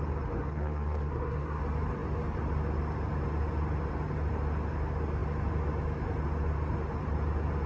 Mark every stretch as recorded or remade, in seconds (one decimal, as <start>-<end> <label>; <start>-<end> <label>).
0.0-0.4 recorded; 0.4-1.6 remade; 1.6-7.7 recorded